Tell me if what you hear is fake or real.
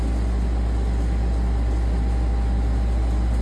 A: real